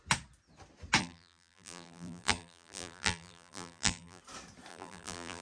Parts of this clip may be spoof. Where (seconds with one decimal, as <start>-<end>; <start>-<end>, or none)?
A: 1.0-4.2; 4.7-5.4